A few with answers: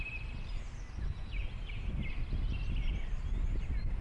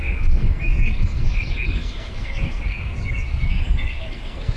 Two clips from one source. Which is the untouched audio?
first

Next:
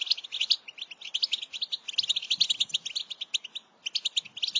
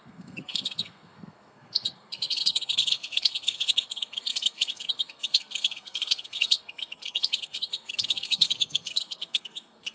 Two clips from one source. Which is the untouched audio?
first